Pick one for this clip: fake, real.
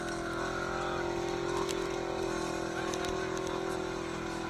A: real